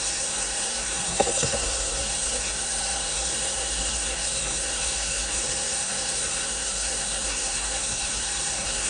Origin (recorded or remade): remade